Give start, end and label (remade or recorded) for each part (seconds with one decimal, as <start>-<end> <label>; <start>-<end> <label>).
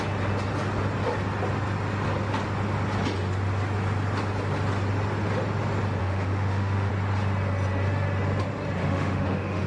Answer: 0.0-6.0 recorded; 6.0-6.9 remade; 6.9-8.8 recorded; 8.8-9.7 remade